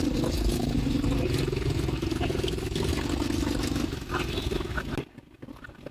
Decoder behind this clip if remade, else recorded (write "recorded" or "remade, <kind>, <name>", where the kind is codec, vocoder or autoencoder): recorded